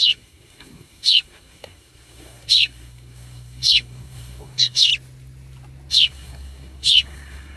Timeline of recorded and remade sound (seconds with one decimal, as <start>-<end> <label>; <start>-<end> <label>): 0.0-4.9 remade; 4.9-5.9 recorded; 5.9-7.6 remade